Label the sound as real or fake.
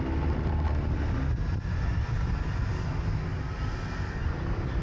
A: real